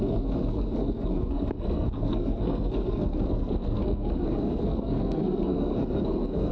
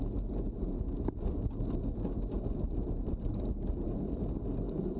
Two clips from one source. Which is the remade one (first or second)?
first